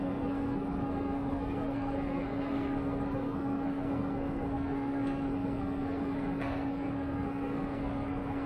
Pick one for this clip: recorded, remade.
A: remade